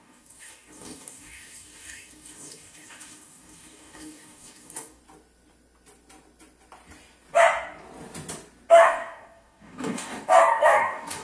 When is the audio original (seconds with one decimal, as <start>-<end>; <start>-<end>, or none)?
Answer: 5.0-8.7